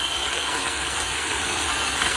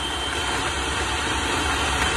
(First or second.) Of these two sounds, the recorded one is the second